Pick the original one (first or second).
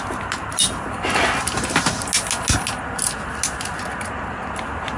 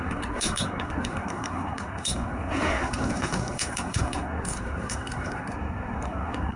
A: first